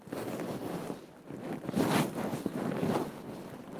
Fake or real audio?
real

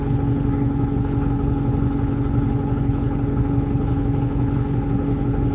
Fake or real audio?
fake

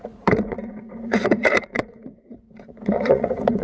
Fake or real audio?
fake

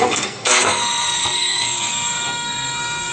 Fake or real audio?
fake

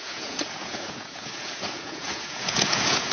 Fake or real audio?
fake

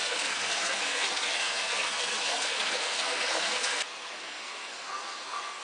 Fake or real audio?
fake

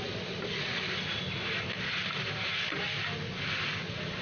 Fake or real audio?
real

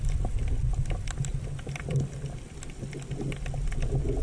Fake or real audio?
real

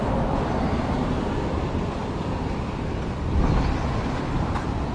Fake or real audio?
fake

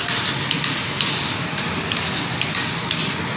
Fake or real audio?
real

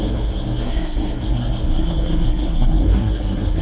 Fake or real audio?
fake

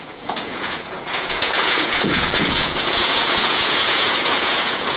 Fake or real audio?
fake